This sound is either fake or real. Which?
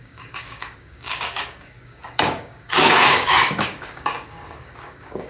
fake